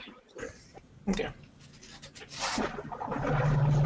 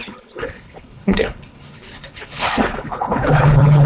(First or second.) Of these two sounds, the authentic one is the first